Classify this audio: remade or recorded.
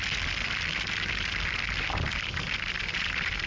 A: recorded